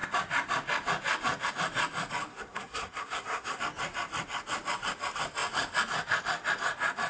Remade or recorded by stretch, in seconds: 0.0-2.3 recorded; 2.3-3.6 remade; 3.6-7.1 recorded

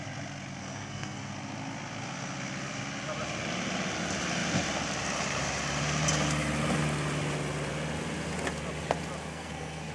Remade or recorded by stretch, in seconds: 0.0-0.6 recorded; 0.6-1.3 remade; 1.3-9.3 recorded; 9.3-9.9 remade

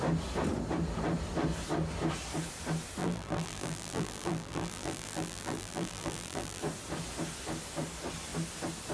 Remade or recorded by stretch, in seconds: 0.0-3.0 recorded; 3.0-6.6 remade; 6.6-8.9 recorded

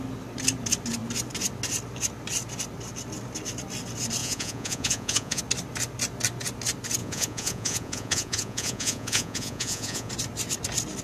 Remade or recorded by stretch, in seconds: 0.0-4.2 recorded; 4.2-5.4 remade; 5.4-7.0 recorded; 7.0-10.1 remade; 10.1-11.0 recorded

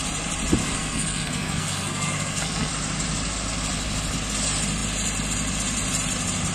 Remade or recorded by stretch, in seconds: 0.0-0.6 recorded; 0.6-2.7 remade; 2.7-6.5 recorded

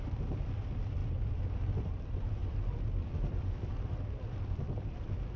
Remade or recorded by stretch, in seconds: 0.0-1.0 remade; 1.0-1.7 recorded; 1.7-5.4 remade